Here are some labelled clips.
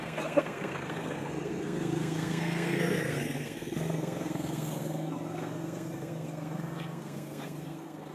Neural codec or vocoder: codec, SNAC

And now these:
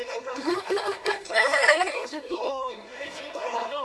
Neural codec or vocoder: codec, SNAC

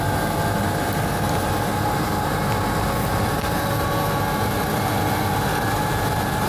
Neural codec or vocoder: none